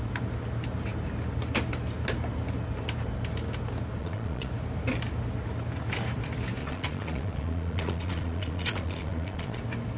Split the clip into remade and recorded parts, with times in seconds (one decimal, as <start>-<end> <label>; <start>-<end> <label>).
0.0-4.0 recorded; 4.0-4.5 remade; 4.5-6.6 recorded; 6.6-9.6 remade; 9.6-10.0 recorded

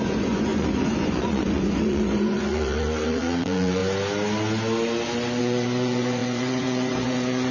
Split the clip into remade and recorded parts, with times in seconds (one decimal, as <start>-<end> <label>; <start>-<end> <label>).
0.0-3.8 remade; 3.8-5.4 recorded; 5.4-7.5 remade